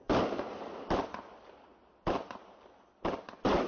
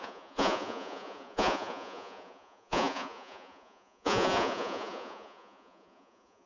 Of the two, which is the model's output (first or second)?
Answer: second